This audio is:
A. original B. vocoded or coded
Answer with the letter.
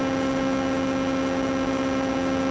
A